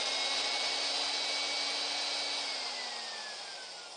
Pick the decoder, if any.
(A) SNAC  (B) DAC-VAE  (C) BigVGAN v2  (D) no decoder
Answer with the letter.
D